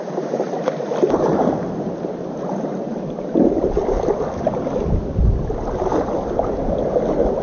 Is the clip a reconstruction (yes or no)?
no